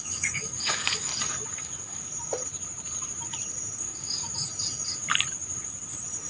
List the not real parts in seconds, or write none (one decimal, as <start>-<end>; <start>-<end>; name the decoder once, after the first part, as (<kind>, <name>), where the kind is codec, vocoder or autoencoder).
0.0-1.1 (codec, DAC); 1.6-2.1; 3.8-4.2